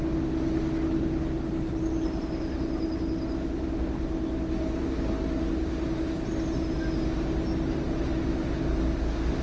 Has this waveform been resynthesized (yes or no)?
no